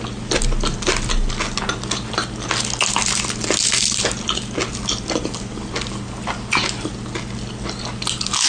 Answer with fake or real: real